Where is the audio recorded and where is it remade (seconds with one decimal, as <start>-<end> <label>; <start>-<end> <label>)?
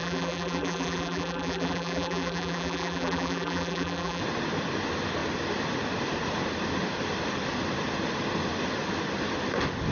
0.0-4.2 remade; 4.2-9.9 recorded